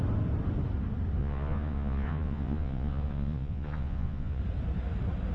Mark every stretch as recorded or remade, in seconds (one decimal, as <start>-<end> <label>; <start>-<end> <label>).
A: 0.0-1.2 recorded; 1.2-4.4 remade; 4.4-5.3 recorded

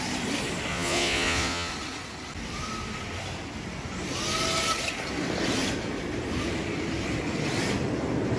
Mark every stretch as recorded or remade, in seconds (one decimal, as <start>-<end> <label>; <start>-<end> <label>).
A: 0.0-0.7 recorded; 0.7-1.7 remade; 1.7-8.4 recorded